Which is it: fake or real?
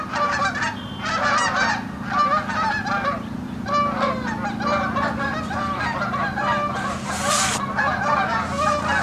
real